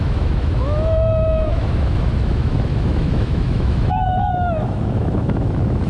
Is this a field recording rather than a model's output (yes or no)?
no